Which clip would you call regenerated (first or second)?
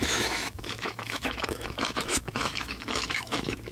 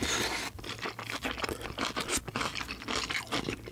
first